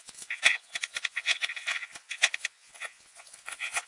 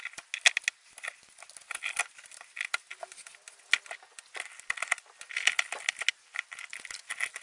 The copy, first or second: first